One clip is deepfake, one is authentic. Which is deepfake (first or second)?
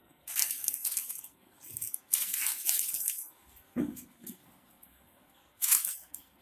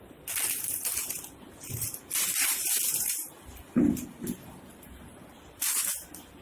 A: first